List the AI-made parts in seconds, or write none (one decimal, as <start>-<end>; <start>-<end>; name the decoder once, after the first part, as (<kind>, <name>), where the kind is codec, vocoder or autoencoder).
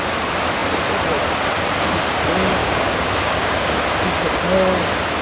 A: 2.6-3.8 (codec, DAC)